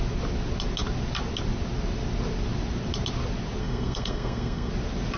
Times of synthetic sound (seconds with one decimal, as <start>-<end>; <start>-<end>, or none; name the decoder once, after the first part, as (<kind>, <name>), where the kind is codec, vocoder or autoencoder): 3.6-4.7 (codec, SNAC)